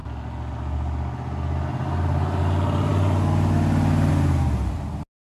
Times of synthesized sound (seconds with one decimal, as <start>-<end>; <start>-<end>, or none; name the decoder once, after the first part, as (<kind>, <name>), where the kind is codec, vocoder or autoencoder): none